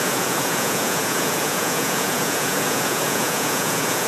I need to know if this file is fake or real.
fake